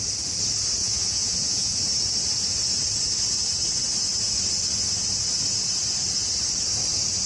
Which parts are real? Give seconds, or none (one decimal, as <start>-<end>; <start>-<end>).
0.0-0.8; 1.8-7.3